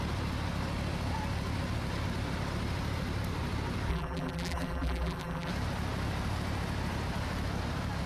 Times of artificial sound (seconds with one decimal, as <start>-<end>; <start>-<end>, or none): 3.9-5.5